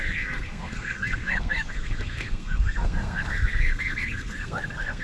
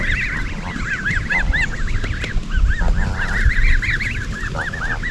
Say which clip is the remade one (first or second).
first